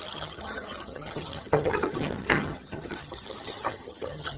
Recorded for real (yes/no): no